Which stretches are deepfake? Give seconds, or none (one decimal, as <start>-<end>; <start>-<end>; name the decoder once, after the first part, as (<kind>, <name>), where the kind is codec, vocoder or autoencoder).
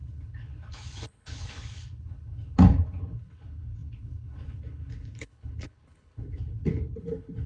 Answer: 0.0-7.5 (codec, HILCodec)